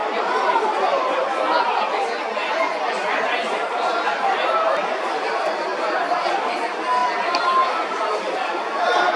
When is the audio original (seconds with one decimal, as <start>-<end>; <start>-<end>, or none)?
0.0-9.2

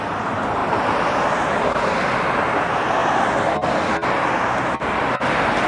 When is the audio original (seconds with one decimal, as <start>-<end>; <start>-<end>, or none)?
0.0-0.6; 1.9-5.7